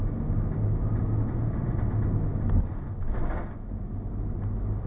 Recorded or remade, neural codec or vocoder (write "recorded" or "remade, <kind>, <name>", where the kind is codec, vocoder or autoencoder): recorded